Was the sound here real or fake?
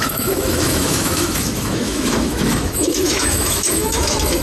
fake